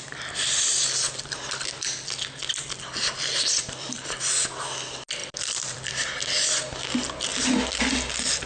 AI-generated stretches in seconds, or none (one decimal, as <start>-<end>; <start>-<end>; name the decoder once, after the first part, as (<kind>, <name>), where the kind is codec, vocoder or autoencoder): 3.5-4.2 (vocoder, BigVGAN v2); 5.2-5.9

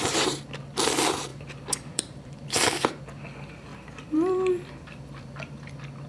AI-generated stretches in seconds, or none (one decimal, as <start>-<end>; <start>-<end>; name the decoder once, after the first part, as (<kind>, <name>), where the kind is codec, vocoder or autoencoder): 1.3-3.0 (vocoder, BigVGAN v2); 3.7-5.6

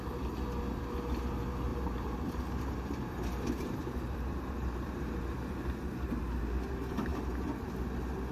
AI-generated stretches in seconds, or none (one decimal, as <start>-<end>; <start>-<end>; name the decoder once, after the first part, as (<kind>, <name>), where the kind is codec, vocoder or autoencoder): 1.7-5.2 (vocoder, BigVGAN v2)